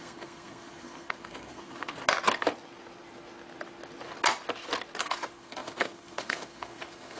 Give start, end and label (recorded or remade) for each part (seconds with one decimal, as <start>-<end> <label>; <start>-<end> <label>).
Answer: 0.0-2.0 remade; 2.0-5.0 recorded; 5.0-7.2 remade